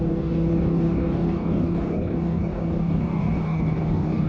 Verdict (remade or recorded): remade